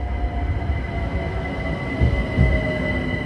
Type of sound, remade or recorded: recorded